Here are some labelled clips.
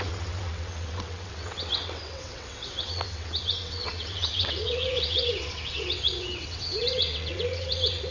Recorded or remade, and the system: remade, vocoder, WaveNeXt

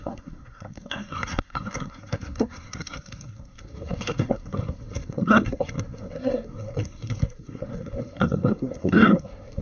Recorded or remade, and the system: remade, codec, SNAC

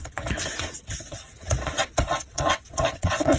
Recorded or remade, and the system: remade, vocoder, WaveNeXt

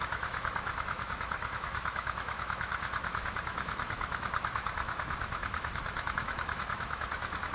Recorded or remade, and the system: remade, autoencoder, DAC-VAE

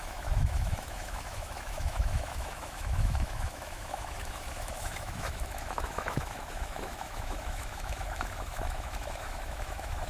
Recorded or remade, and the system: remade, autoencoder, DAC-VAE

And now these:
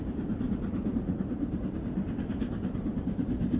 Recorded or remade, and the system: remade, vocoder, BigVGAN v2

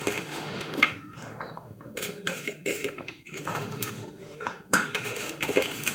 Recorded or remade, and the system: remade, autoencoder, DAC-VAE